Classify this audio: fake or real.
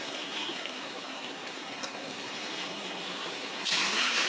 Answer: fake